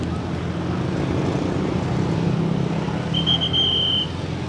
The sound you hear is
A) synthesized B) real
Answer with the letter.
B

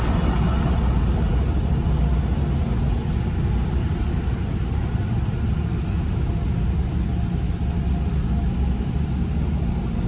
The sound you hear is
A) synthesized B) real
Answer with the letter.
B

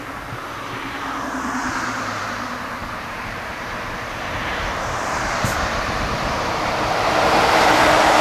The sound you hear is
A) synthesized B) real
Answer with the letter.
A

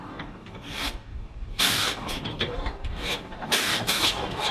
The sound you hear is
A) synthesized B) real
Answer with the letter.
A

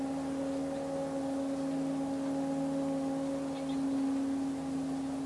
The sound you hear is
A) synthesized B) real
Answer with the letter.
B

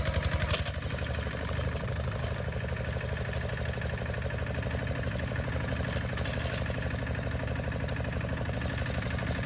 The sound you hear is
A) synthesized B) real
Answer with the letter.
B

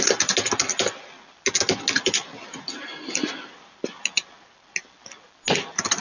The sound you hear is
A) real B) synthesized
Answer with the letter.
A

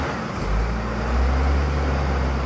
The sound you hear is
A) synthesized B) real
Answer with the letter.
B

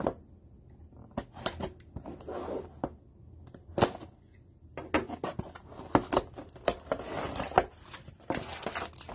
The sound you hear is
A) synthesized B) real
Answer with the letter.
B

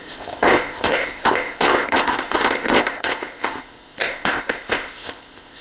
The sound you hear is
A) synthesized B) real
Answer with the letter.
A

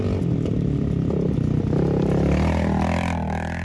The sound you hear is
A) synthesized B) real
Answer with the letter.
B